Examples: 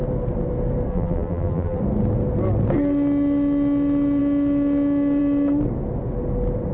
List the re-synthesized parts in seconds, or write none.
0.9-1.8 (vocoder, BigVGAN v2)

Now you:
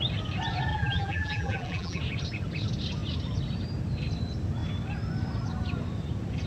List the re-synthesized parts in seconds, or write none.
0.7-2.0 (vocoder, BigVGAN v2)